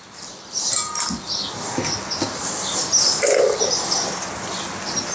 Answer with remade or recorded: recorded